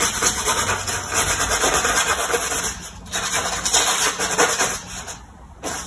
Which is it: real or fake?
real